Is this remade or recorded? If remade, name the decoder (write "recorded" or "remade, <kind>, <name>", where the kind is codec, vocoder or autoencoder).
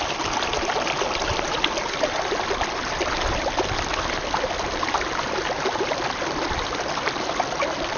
recorded